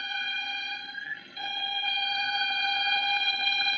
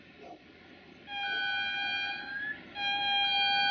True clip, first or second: second